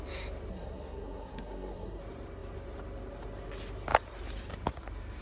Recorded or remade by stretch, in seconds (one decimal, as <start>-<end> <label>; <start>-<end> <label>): 0.0-0.5 recorded; 0.5-2.0 remade; 2.0-5.2 recorded